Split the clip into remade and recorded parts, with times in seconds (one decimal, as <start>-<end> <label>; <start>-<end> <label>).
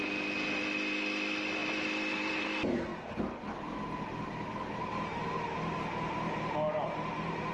0.0-7.5 recorded